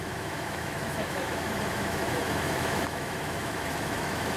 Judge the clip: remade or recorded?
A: remade